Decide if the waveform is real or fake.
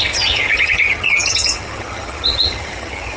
fake